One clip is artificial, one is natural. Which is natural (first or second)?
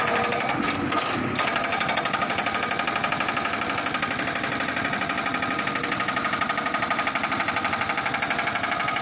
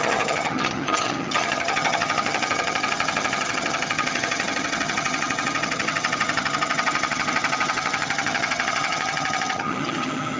first